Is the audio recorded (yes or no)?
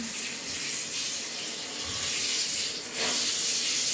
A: no